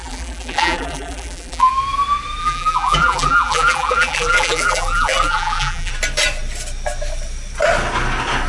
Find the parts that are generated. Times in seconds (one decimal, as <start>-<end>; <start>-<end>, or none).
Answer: 0.0-1.7; 2.4-5.9